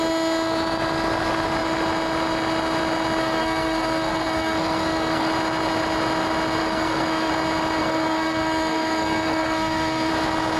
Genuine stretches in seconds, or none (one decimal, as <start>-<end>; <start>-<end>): 0.0-3.2; 5.3-6.6; 7.3-7.8; 10.1-10.6